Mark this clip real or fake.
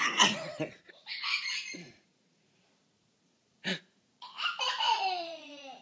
fake